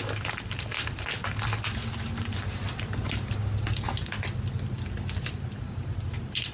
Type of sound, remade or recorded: recorded